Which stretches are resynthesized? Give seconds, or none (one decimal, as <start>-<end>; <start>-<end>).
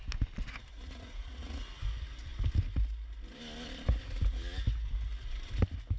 0.7-1.8